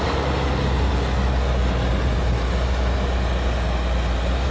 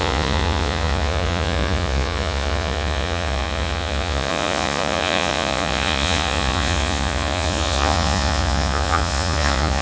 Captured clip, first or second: first